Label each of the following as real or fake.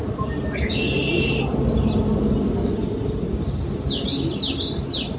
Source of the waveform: real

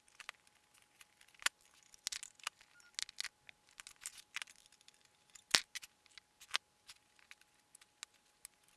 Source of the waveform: real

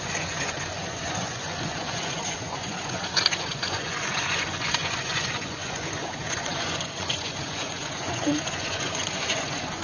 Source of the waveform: fake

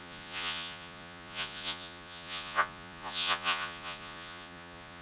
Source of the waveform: fake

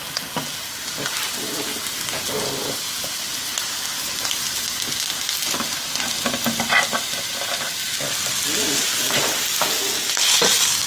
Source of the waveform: real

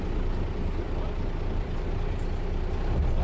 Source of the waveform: real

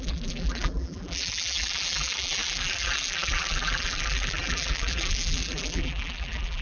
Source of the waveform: fake